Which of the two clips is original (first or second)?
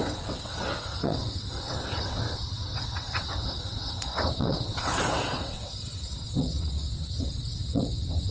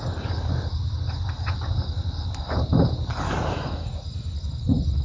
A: second